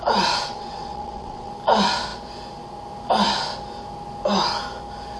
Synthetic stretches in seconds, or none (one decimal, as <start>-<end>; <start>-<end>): 0.5-1.5